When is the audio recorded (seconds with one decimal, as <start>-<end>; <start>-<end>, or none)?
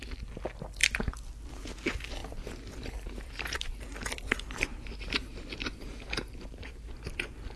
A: 0.8-1.5